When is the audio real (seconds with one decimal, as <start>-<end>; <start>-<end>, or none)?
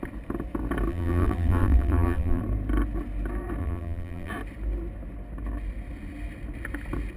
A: 0.0-0.9; 2.4-3.6; 4.3-7.2